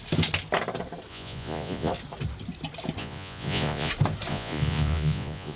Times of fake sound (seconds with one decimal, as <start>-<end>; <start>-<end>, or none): 1.1-1.9; 3.0-3.9; 4.3-5.6